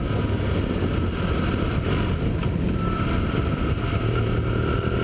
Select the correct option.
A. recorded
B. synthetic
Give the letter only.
A